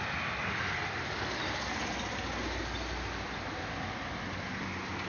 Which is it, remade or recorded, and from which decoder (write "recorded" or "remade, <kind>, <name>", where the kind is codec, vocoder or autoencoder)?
recorded